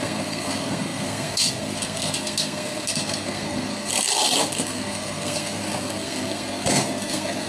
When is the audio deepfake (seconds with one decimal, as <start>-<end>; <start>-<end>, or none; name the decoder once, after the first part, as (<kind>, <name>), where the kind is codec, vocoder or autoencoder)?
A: 0.0-3.9 (codec, SNAC); 4.5-7.5